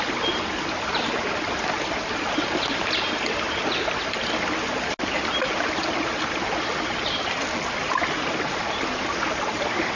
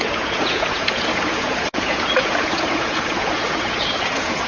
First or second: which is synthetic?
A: second